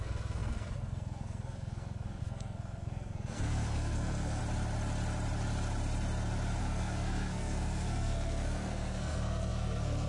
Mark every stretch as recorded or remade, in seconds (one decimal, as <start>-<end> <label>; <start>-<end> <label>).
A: 0.0-4.4 remade; 4.4-6.6 recorded; 6.6-10.1 remade